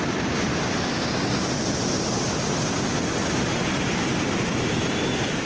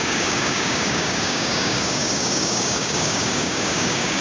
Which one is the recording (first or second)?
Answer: first